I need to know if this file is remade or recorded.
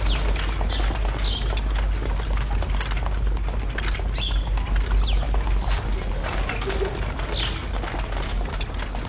recorded